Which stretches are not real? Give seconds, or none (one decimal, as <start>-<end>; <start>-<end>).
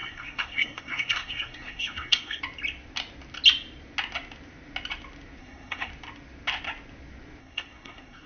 0.0-2.4; 5.4-5.9; 7.4-8.3